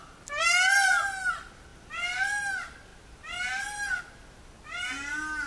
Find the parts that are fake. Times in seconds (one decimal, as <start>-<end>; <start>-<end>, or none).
none